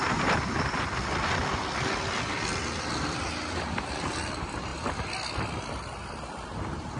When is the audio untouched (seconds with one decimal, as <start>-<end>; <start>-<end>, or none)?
0.0-7.0